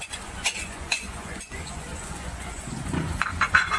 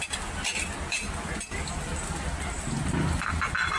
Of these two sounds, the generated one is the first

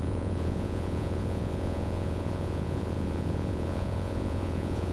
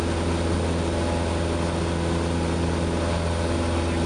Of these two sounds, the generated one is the first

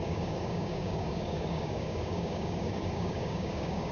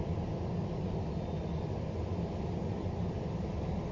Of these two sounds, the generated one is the first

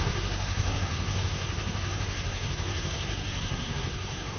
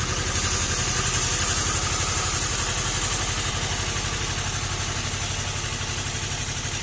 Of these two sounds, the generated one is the first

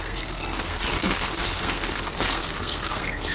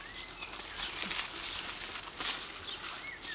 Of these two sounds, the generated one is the first